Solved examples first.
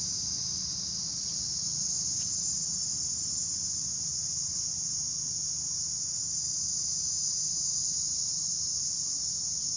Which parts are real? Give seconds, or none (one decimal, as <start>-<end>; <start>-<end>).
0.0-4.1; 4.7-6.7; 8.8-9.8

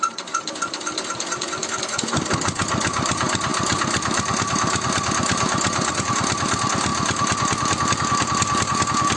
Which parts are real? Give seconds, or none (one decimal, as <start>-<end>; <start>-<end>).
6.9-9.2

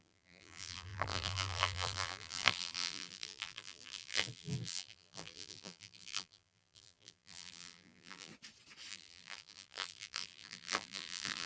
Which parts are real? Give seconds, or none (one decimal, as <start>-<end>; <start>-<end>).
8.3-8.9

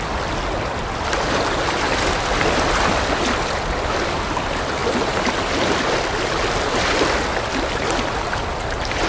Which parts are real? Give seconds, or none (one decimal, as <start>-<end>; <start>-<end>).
0.0-9.1

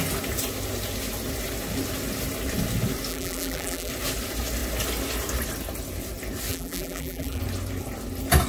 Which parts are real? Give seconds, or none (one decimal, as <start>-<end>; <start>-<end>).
0.0-3.1; 3.9-6.5; 7.4-8.5

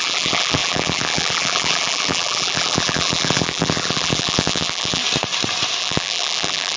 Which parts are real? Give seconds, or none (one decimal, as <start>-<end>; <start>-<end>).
5.0-5.8